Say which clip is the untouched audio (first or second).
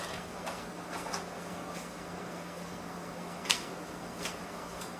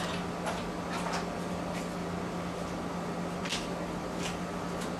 second